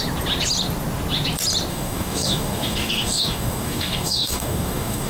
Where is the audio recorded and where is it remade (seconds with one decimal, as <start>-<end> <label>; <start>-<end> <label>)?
0.0-1.7 recorded; 1.7-5.1 remade